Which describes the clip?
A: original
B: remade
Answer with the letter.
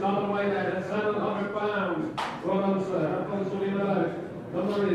B